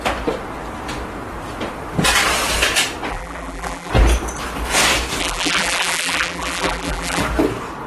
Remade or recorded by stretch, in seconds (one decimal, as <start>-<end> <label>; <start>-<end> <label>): 0.0-3.1 recorded; 3.1-3.9 remade; 3.9-5.2 recorded; 5.2-7.2 remade; 7.2-7.9 recorded